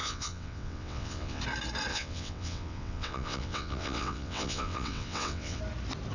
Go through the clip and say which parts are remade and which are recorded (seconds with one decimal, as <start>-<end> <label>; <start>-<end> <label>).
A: 0.0-1.4 remade; 1.4-1.9 recorded; 1.9-5.6 remade; 5.6-6.1 recorded